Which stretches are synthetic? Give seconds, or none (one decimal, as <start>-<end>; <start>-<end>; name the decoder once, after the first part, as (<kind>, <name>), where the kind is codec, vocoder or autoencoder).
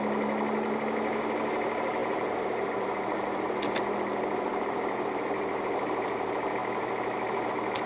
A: none